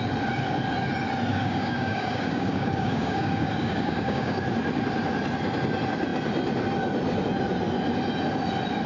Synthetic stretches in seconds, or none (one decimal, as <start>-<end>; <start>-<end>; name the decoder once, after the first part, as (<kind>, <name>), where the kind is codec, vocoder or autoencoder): 1.3-4.4 (codec, DAC)